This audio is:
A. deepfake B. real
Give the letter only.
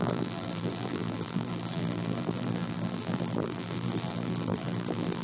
A